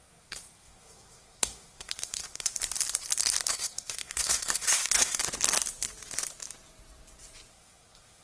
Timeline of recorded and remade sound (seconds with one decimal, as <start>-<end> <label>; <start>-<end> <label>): 0.0-2.5 remade; 2.5-3.5 recorded; 3.5-5.2 remade; 5.2-7.5 recorded; 7.5-8.2 remade